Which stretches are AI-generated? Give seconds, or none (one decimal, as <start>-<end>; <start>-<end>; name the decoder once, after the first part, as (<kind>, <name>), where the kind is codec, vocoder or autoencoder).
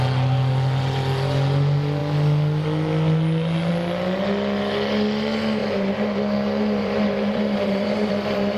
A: 5.6-6.2 (vocoder, BigVGAN v2); 6.8-8.1